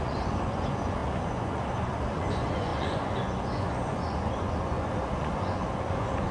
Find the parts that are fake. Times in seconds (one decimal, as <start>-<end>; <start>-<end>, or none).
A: 0.0-6.3